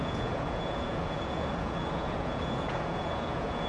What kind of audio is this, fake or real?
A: fake